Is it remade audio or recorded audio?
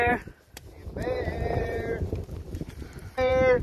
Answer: remade